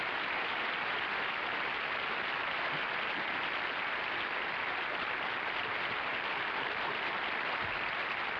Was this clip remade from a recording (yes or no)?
no